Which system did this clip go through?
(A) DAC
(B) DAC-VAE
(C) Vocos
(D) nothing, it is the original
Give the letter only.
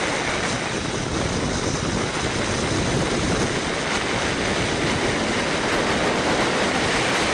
D